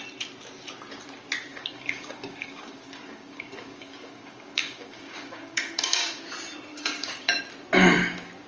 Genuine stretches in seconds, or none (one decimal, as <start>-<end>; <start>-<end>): 0.0-1.5; 6.2-6.7; 7.4-8.5